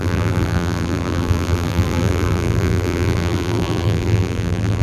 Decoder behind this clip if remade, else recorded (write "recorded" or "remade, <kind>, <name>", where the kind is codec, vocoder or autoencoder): remade, vocoder, BigVGAN v2